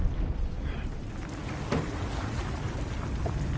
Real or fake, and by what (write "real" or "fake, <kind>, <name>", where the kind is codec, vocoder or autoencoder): real